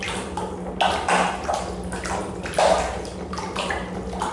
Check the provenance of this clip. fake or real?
real